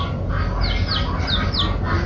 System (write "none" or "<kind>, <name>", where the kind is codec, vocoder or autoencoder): none